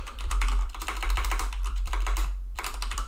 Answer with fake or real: fake